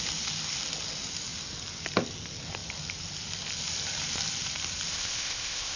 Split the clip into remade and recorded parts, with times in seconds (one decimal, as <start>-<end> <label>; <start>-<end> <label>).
0.0-4.9 recorded; 4.9-5.8 remade